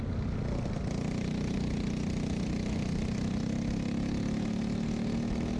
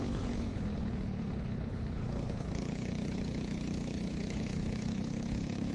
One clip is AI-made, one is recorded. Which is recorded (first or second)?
first